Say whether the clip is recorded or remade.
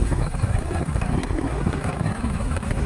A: remade